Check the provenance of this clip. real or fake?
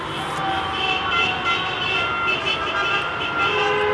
real